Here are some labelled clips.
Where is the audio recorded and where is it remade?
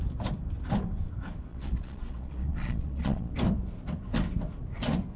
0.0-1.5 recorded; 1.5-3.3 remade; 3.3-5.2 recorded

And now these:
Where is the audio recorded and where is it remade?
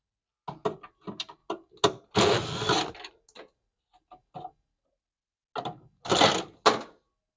0.0-7.4 recorded